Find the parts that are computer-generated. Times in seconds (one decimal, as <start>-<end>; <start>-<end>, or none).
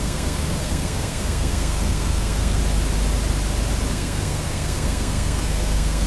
0.0-2.6; 3.9-6.1